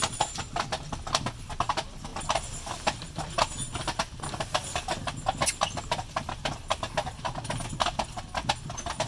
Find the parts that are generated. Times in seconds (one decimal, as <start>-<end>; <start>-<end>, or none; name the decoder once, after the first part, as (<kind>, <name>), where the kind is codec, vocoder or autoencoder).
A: none